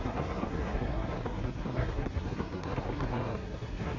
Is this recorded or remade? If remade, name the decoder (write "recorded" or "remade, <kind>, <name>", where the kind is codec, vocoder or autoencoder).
remade, codec, SNAC